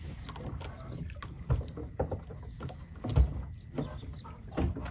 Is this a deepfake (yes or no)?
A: no